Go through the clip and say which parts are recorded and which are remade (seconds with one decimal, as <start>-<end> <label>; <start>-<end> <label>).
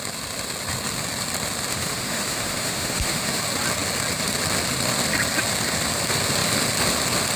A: 0.0-1.7 recorded; 1.7-3.4 remade; 3.4-7.4 recorded